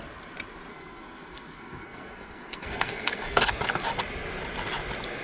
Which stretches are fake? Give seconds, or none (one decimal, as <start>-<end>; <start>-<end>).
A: 0.7-3.5